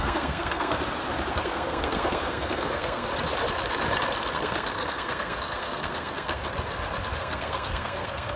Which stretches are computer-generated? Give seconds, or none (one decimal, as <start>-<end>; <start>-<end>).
0.0-0.8; 1.3-3.1; 4.3-6.4; 7.2-8.4